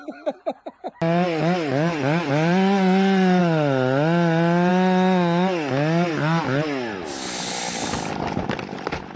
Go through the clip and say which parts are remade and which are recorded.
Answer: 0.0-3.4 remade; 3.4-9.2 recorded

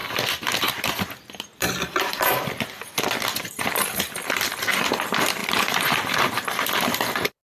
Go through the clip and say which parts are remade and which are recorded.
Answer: 0.0-7.5 remade

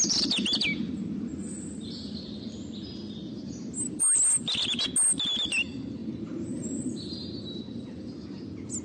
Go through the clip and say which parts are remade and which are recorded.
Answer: 0.0-6.0 recorded; 6.0-7.6 remade; 7.6-8.8 recorded

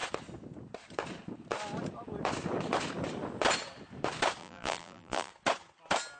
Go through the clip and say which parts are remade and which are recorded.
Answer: 0.0-4.4 recorded; 4.4-5.3 remade; 5.3-6.2 recorded

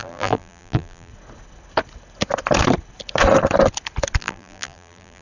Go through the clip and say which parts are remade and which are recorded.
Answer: 0.0-1.1 remade; 1.1-4.2 recorded; 4.2-5.2 remade

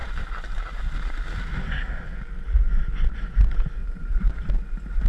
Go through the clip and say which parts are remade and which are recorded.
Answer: 0.0-0.8 remade; 0.8-3.8 recorded; 3.8-4.5 remade; 4.5-5.1 recorded